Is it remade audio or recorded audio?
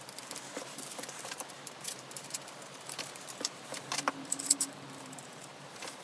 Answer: remade